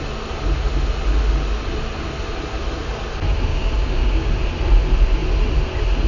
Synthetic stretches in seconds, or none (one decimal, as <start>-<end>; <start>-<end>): 3.5-4.3